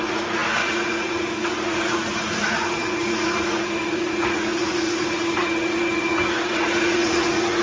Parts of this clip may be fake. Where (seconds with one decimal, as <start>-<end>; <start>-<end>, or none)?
0.0-7.6